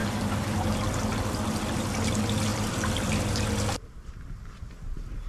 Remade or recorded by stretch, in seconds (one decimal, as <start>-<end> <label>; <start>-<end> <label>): 0.0-1.1 remade; 1.1-2.5 recorded; 2.5-4.1 remade; 4.1-5.3 recorded